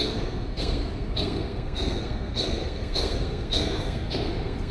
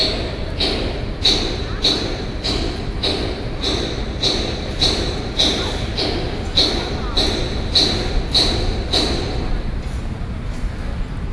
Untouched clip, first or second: second